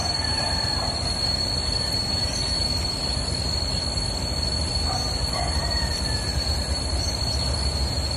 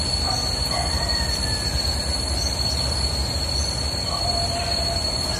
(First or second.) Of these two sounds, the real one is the second